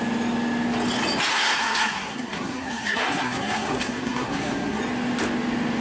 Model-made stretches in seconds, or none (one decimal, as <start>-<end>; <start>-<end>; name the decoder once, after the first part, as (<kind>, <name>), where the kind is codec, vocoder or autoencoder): 1.3-4.8 (codec, SNAC)